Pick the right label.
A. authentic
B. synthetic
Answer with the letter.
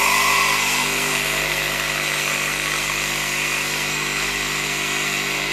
B